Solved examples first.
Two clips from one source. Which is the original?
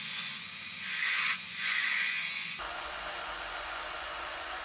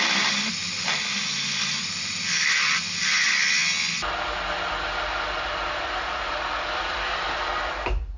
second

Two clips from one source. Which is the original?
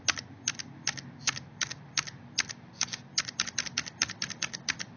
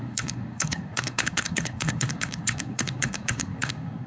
first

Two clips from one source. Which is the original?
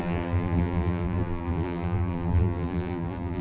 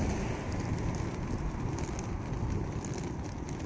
second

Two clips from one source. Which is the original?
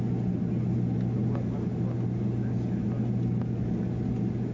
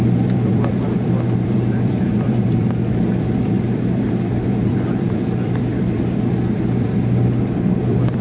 first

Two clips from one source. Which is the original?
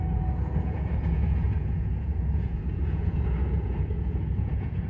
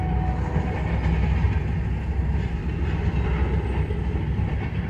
second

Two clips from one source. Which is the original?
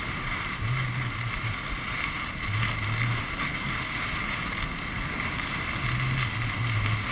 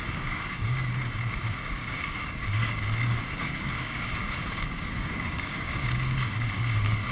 first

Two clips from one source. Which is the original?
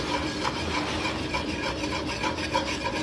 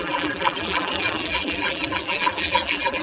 first